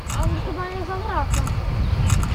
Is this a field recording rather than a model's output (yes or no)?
yes